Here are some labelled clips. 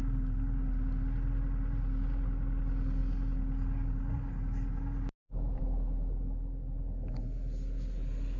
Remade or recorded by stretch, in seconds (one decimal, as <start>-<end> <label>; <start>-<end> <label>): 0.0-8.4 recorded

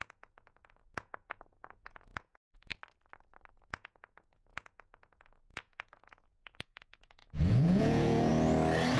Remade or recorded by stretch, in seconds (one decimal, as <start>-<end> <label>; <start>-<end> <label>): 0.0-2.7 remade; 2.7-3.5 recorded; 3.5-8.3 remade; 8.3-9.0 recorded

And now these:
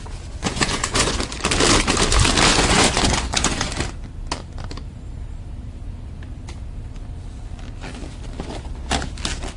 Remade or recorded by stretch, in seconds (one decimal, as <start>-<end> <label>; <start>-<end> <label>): 0.0-0.4 recorded; 0.4-1.4 remade; 1.4-2.5 recorded; 2.5-3.7 remade; 3.7-9.6 recorded

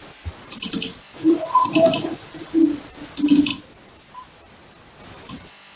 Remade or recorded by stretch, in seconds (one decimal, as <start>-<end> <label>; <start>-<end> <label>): 0.0-1.2 recorded; 1.2-2.5 remade; 2.5-5.8 recorded